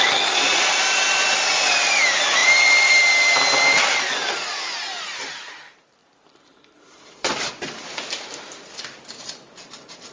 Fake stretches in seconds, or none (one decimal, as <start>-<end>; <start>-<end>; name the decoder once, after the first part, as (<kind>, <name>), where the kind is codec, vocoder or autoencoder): 0.5-2.0 (vocoder, BigVGAN v2); 2.4-3.0; 6.0-7.5